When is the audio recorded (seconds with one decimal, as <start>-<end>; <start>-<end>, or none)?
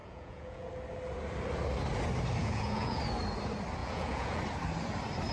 0.7-2.4; 3.0-3.8; 4.4-5.3